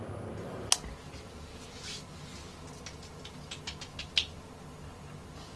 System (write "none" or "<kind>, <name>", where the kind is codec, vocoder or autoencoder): none